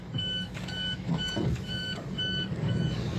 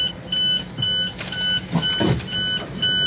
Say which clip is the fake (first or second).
first